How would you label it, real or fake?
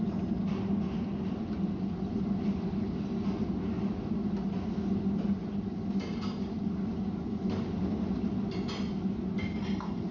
real